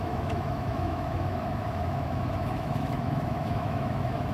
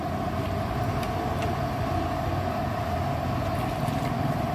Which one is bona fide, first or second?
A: second